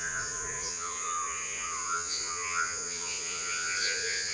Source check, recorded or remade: remade